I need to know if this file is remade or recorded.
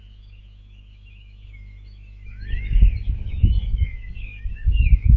remade